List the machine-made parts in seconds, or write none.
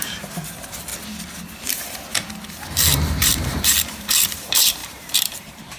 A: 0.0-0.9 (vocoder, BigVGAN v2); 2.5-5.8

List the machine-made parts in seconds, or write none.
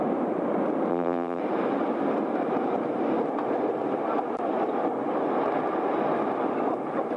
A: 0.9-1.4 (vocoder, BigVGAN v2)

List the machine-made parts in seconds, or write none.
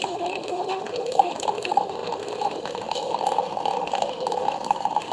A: 0.0-5.1 (autoencoder, DAC-VAE)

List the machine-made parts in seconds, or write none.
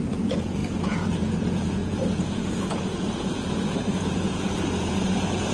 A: 0.0-5.5 (vocoder, Vocos)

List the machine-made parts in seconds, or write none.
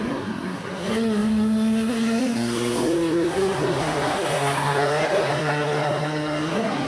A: 0.0-6.9 (codec, SNAC)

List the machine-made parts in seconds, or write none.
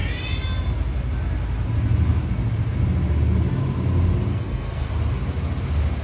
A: 4.3-4.9 (codec, SNAC)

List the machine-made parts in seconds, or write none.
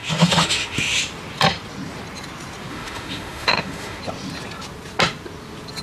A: 0.0-1.0 (autoencoder, DAC-VAE); 2.7-4.0